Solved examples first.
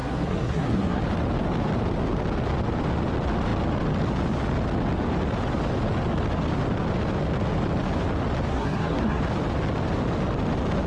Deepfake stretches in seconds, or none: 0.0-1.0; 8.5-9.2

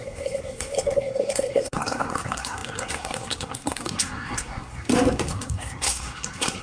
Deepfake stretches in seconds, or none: 0.0-6.6

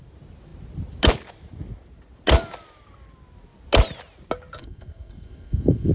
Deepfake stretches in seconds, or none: 4.6-5.9

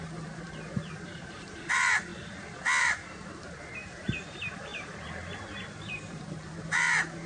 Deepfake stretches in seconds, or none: 0.0-2.1; 2.8-7.3